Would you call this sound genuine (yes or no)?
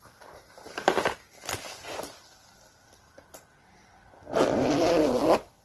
yes